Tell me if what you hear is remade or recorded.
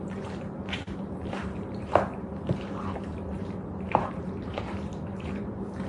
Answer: remade